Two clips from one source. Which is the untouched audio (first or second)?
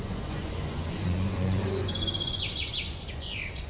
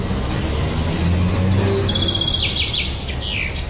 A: second